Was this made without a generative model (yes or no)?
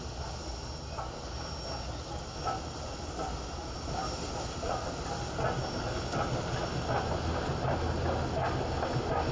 yes